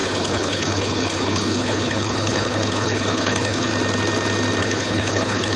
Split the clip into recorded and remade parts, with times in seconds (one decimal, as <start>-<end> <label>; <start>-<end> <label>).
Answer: 0.0-3.7 remade; 3.7-4.6 recorded; 4.6-5.6 remade